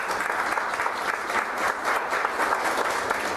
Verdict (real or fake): real